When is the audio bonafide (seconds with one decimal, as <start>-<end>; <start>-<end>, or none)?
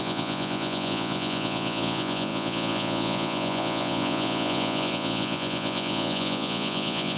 none